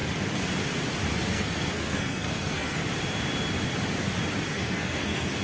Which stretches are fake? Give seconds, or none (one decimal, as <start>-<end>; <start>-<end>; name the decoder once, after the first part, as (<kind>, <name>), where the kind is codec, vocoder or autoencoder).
1.1-2.8 (codec, SNAC); 4.5-5.4